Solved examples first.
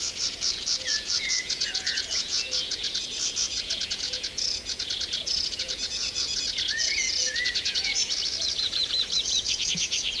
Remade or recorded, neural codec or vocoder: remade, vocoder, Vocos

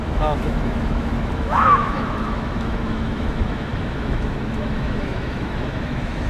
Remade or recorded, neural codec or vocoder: remade, autoencoder, DAC-VAE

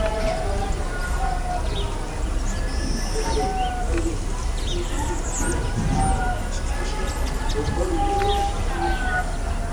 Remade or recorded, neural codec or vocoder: recorded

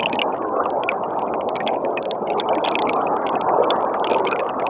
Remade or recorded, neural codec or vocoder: recorded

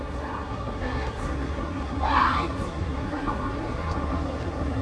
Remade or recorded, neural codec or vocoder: remade, codec, SNAC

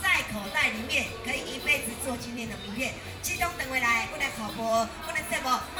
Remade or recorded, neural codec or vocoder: remade, vocoder, BigVGAN v2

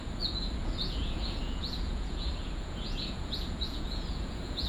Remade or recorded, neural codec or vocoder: remade, vocoder, Vocos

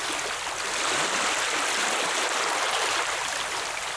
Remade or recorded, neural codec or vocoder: recorded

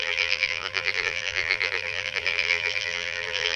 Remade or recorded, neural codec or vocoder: remade, vocoder, BigVGAN v2